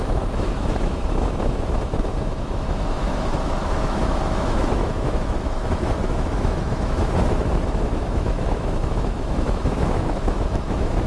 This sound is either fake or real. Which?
fake